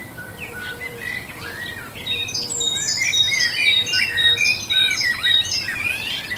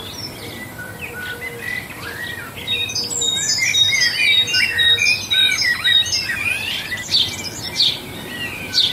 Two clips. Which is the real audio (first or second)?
second